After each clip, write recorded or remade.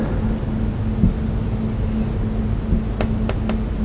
recorded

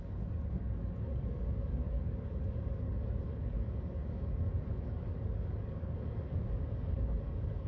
remade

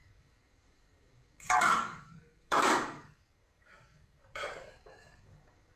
remade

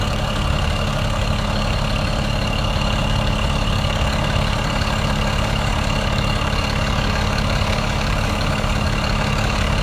remade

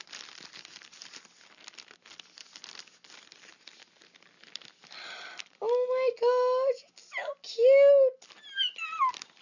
recorded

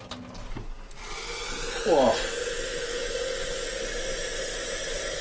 recorded